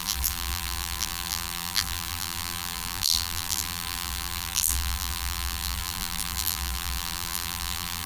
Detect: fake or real fake